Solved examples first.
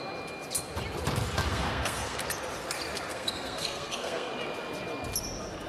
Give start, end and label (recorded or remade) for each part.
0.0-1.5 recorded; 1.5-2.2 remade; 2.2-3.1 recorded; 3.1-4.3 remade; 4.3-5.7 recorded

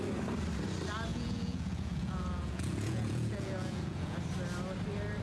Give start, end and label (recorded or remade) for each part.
0.0-1.1 recorded; 1.1-4.2 remade; 4.2-5.2 recorded